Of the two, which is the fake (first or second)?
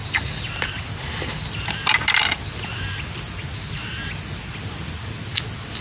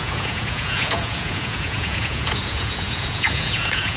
second